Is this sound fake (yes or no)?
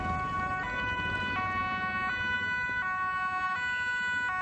no